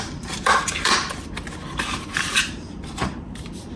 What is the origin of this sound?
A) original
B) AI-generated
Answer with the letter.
B